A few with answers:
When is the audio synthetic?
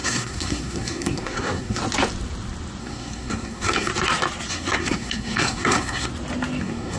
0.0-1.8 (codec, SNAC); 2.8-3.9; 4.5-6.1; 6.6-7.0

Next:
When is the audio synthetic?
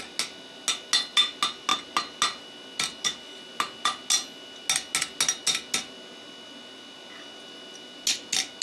none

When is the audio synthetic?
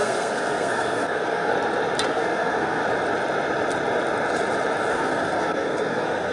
0.0-1.5 (codec, SNAC); 2.1-2.8; 4.9-6.3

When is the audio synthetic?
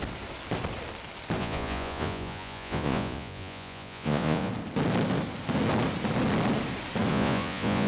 1.4-4.5 (vocoder, Vocos); 7.1-7.9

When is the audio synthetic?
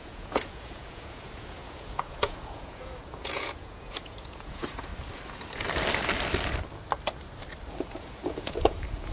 0.0-4.9 (vocoder, Vocos); 7.7-9.1